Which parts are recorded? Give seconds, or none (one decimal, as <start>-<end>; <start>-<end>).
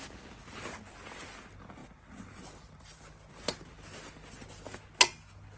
0.0-5.6